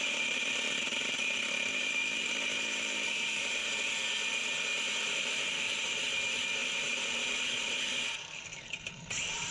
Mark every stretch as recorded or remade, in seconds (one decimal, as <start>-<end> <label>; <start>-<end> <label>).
0.0-3.6 remade; 3.6-5.1 recorded; 5.1-9.5 remade